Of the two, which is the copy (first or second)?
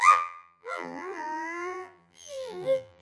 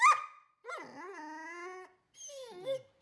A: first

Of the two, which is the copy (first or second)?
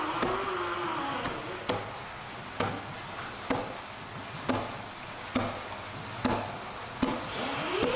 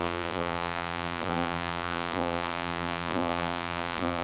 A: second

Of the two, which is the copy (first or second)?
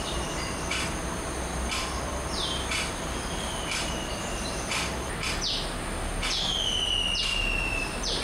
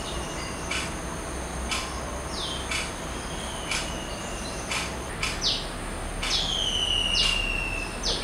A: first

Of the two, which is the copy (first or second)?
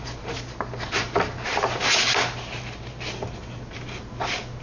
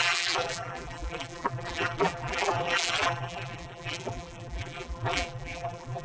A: second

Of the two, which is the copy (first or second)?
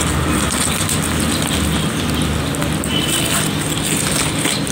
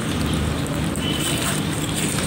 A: second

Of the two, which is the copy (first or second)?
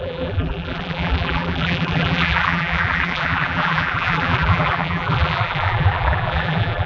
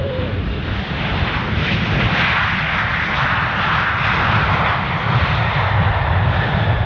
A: first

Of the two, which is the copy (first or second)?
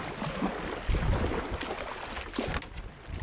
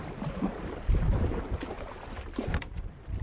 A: second